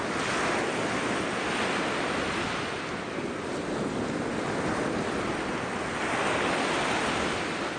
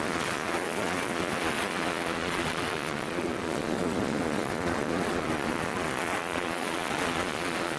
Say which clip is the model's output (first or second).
second